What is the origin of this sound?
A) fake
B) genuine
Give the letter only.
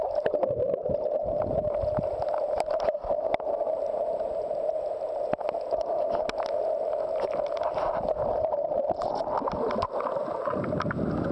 B